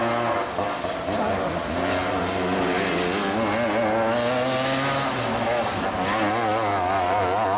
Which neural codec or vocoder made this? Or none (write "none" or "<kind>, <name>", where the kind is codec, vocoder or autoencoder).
none